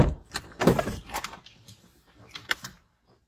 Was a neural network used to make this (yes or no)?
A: yes